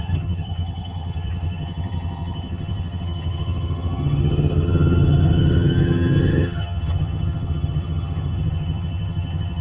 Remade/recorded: remade